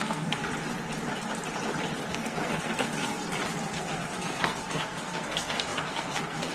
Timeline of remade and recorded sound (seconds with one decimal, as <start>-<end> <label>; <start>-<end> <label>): 0.0-0.4 remade; 0.4-2.1 recorded; 2.1-3.2 remade; 3.2-3.7 recorded; 3.7-6.5 remade